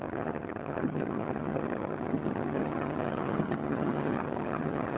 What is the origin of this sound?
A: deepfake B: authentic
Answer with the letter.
A